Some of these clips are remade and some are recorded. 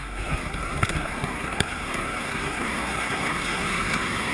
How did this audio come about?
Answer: remade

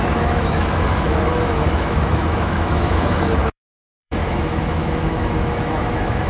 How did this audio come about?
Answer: remade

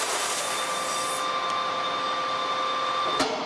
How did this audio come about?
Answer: recorded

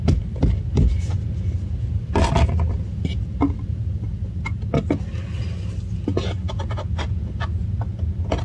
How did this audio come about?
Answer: recorded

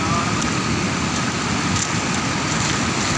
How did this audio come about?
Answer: recorded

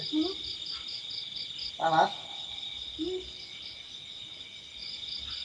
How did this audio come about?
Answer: recorded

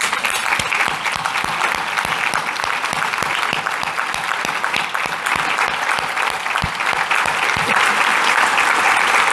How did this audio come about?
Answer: recorded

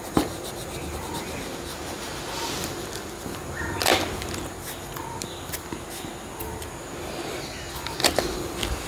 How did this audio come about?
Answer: recorded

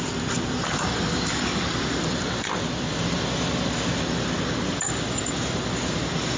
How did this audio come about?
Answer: recorded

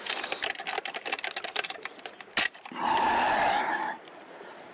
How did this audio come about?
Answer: recorded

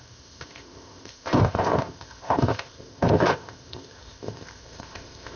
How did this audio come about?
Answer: remade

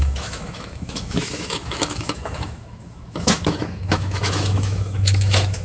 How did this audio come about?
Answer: remade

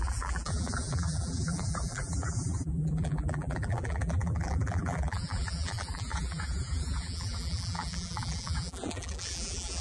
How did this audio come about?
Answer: remade